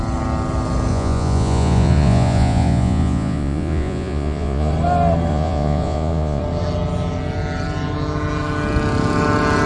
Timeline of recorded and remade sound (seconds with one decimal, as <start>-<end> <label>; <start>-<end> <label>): 0.0-0.9 recorded; 0.9-4.7 remade; 4.7-5.3 recorded; 5.3-6.4 remade; 6.4-9.7 recorded